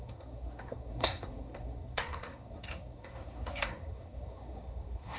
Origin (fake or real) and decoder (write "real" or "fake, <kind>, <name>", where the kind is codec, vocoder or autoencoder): fake, codec, SNAC